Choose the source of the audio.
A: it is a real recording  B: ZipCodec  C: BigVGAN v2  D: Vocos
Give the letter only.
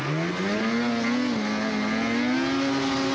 A